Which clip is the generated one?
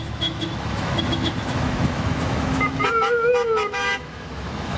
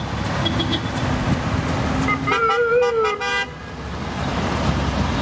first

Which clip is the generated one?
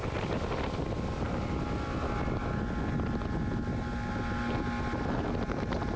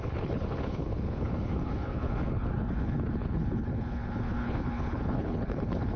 second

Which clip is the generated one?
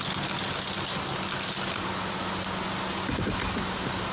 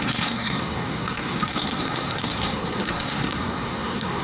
second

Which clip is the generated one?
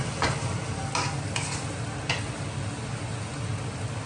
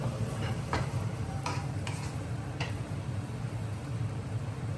second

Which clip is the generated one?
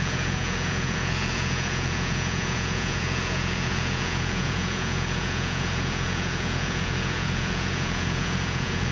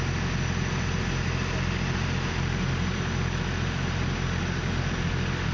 first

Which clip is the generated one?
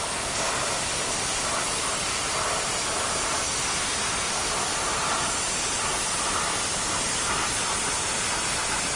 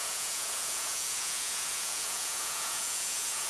second